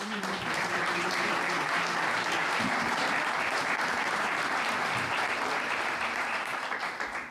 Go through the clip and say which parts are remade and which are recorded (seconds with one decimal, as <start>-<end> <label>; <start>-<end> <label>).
0.0-6.5 remade; 6.5-7.3 recorded